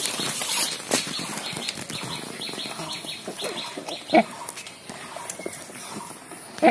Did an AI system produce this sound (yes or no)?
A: no